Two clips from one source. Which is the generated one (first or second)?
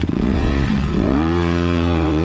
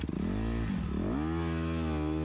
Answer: first